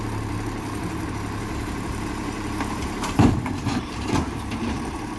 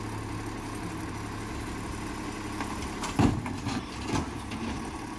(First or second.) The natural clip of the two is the second